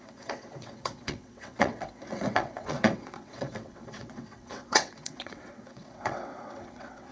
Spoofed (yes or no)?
yes